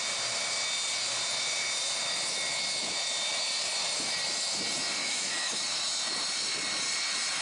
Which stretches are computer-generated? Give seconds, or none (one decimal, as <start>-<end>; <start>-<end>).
5.0-5.6